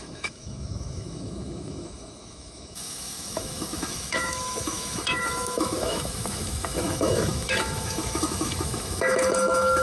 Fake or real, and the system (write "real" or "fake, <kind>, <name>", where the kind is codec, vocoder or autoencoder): fake, autoencoder, DAC-VAE